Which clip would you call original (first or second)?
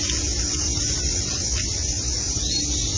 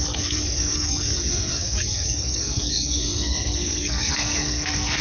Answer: first